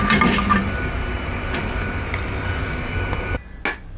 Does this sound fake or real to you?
real